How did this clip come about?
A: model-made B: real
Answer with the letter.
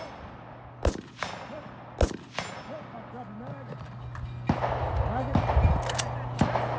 B